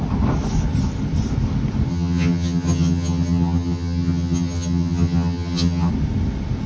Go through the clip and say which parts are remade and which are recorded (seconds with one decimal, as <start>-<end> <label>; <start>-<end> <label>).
0.0-1.9 recorded; 1.9-5.9 remade; 5.9-6.7 recorded